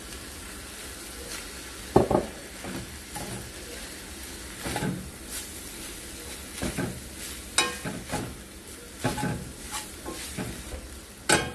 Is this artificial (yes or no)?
no